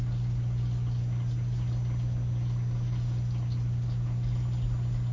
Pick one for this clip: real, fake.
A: real